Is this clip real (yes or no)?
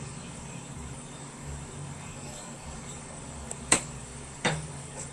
no